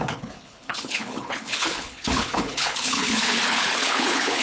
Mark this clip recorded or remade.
remade